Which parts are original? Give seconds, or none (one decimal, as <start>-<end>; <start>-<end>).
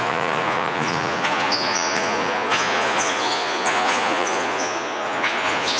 none